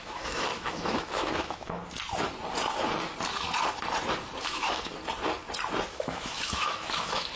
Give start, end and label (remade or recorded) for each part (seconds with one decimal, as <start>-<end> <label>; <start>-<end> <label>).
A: 0.0-1.8 remade; 1.8-4.4 recorded; 4.4-5.0 remade; 5.0-5.9 recorded; 5.9-7.4 remade